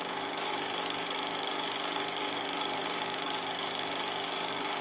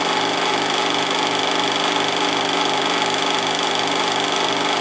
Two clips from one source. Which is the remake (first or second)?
first